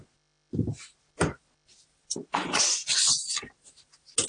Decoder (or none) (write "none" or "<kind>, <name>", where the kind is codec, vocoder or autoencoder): none